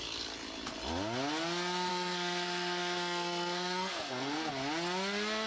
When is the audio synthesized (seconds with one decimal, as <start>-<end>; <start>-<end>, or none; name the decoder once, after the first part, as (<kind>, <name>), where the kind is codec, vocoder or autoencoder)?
1.9-4.5 (codec, SNAC)